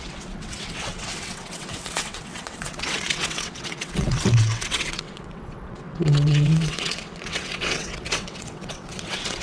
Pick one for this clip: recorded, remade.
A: remade